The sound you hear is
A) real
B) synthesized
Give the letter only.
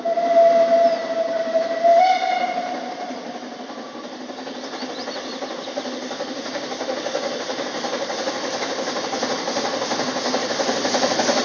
A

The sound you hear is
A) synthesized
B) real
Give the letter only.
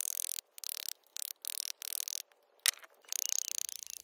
B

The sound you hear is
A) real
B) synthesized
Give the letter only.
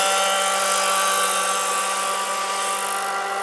A